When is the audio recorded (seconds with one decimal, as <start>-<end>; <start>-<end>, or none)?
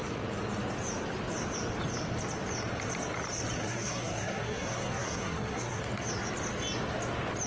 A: 0.0-3.6; 5.8-7.5